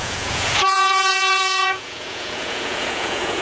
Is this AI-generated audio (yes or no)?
yes